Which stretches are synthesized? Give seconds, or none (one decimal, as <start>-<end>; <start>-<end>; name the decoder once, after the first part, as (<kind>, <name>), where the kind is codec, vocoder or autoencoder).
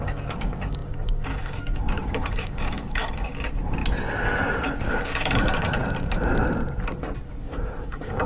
0.0-3.8 (codec, DAC); 4.9-5.8; 7.4-8.3